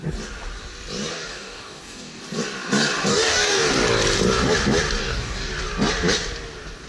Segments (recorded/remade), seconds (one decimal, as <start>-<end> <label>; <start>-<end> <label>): 0.0-1.1 recorded; 1.1-2.2 remade; 2.2-3.1 recorded; 3.1-3.7 remade; 3.7-5.0 recorded; 5.0-5.5 remade; 5.5-6.9 recorded